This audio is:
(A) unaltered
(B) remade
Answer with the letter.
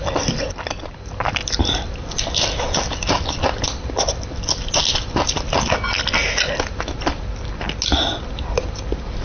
A